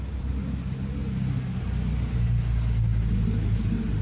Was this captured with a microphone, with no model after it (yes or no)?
yes